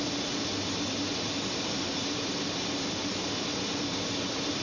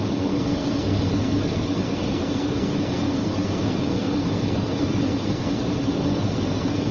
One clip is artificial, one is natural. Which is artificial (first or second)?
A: second